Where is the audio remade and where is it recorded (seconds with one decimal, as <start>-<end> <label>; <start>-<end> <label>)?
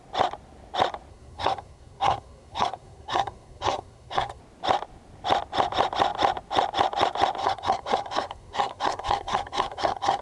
0.0-1.1 recorded; 1.1-4.4 remade; 4.4-7.4 recorded; 7.4-10.2 remade